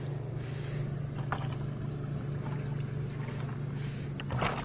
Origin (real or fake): real